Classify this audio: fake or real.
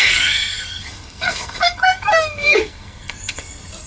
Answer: fake